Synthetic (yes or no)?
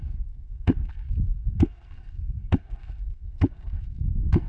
yes